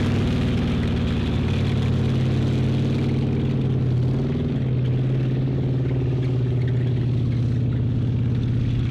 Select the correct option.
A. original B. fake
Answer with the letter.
A